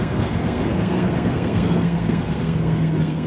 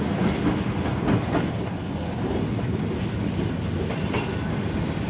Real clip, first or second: second